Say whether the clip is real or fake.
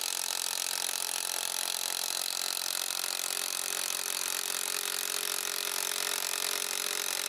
real